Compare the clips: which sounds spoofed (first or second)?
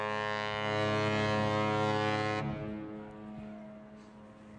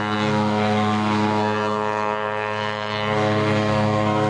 second